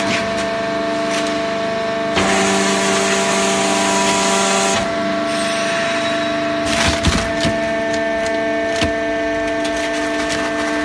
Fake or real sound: real